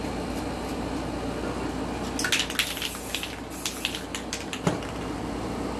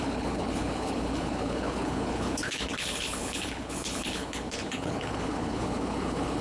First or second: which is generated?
second